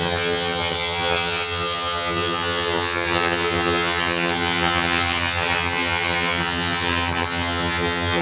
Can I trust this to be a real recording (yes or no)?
no